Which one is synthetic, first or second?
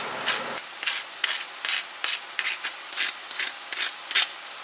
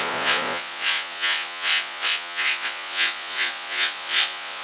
second